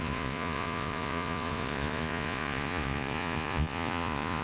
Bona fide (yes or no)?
no